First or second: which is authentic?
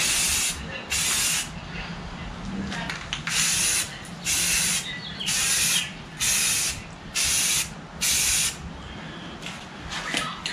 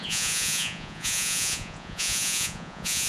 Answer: first